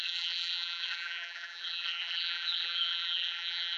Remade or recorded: remade